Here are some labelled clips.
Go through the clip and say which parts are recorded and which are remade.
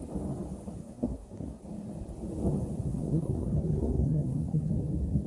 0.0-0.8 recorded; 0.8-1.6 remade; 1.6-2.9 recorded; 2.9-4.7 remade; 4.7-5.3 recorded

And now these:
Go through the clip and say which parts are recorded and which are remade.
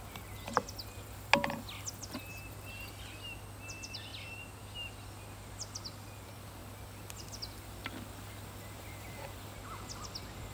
0.0-10.5 recorded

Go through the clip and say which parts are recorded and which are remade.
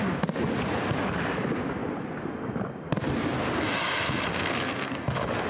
0.0-4.3 recorded; 4.3-5.1 remade; 5.1-5.5 recorded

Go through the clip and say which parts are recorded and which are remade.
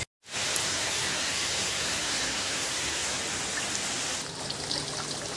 0.0-0.6 recorded; 0.6-3.2 remade; 3.2-5.4 recorded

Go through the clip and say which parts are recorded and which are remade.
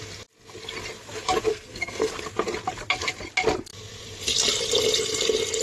0.0-1.5 recorded; 1.5-2.1 remade; 2.1-5.6 recorded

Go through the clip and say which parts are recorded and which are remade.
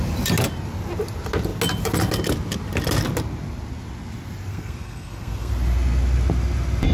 0.0-4.5 recorded; 4.5-5.5 remade; 5.5-6.9 recorded